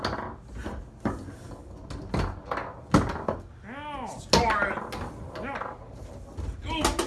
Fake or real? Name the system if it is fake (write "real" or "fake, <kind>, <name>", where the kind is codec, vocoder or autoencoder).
real